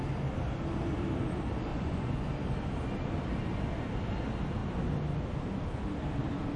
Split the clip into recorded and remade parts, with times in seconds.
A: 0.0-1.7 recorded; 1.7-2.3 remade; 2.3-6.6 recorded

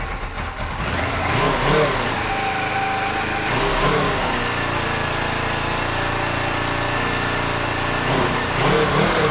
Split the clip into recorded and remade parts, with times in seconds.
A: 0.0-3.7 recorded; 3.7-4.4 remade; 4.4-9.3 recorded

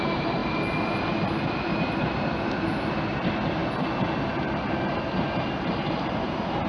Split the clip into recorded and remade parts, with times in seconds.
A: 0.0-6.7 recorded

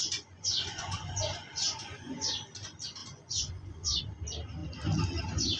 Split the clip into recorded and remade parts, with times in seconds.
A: 0.0-2.3 remade; 2.3-3.0 recorded; 3.0-4.0 remade; 4.0-5.6 recorded

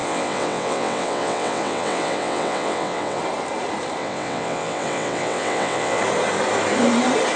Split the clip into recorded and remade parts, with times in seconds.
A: 0.0-3.2 remade; 3.2-4.0 recorded; 4.0-6.0 remade; 6.0-7.4 recorded

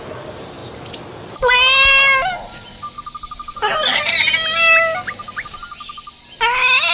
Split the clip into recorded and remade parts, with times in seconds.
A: 0.0-6.9 recorded

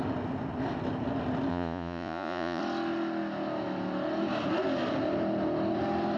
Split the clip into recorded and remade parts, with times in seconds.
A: 0.0-1.5 recorded; 1.5-2.6 remade; 2.6-6.2 recorded